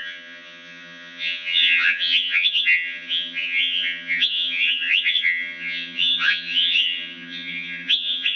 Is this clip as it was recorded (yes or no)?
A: no